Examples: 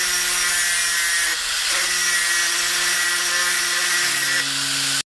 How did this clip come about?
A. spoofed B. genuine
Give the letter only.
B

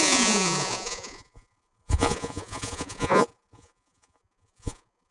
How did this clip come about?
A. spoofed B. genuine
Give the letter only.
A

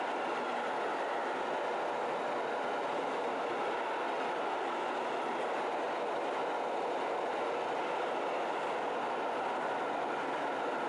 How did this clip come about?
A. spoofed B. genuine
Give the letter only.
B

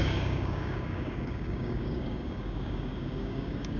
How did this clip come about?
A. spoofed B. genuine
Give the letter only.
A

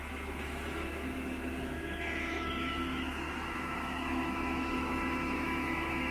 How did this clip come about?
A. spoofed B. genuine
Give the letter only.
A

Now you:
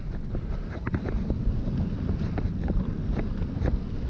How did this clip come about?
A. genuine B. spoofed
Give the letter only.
A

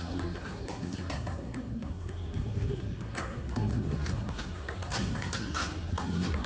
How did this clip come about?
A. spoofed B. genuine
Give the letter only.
A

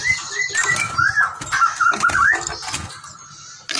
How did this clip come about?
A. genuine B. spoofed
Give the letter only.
A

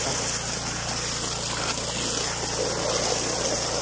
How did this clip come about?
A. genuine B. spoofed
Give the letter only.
A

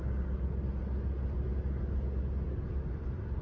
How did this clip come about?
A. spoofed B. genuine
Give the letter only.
B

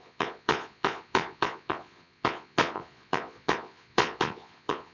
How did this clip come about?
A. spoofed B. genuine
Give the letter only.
A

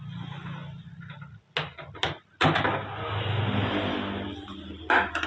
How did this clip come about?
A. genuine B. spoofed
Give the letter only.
A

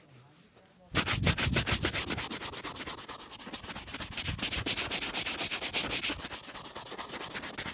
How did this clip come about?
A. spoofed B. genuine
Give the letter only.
B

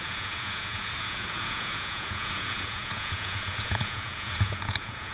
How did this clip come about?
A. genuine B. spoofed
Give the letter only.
B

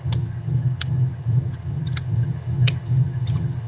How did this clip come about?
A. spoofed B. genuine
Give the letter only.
A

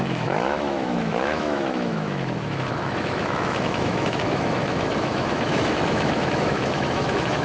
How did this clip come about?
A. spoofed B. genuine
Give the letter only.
A